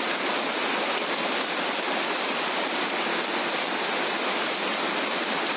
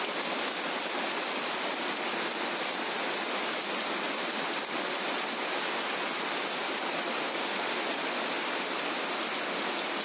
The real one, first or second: second